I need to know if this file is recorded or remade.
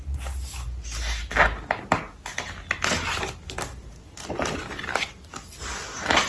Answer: recorded